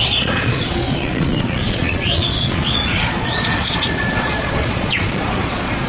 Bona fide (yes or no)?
no